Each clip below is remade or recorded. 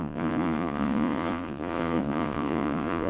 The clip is remade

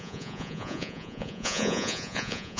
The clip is remade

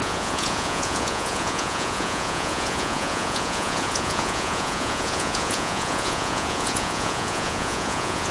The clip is remade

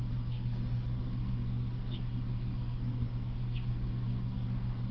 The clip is remade